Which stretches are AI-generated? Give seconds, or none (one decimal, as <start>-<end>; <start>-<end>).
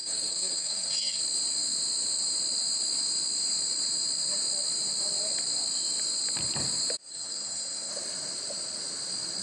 0.0-1.2; 7.1-7.9